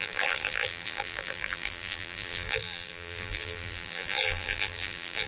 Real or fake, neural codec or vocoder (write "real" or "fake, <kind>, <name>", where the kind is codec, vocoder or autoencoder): fake, vocoder, BigVGAN v2